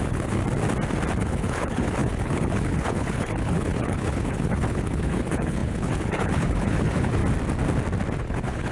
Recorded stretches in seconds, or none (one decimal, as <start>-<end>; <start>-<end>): 0.4-1.2; 7.2-8.2